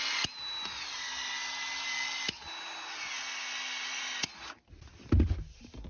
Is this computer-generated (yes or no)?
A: no